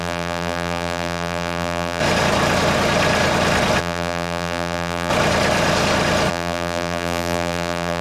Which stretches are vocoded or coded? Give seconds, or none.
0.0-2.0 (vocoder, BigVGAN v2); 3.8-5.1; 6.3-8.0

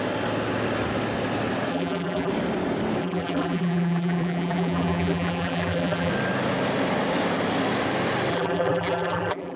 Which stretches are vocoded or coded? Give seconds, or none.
1.7-2.3 (vocoder, BigVGAN v2); 3.0-6.1; 8.3-9.6

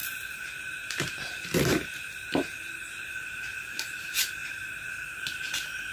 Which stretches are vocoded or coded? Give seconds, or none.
0.0-1.2 (vocoder, BigVGAN v2); 4.4-4.9

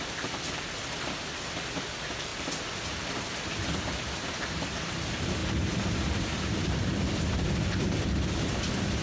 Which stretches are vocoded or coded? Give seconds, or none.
0.0-2.3 (vocoder, BigVGAN v2); 4.9-5.4; 7.6-9.0

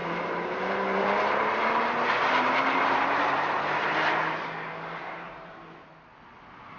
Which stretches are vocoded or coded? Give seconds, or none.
0.0-3.6 (vocoder, BigVGAN v2); 5.0-5.9